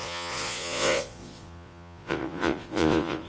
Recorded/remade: remade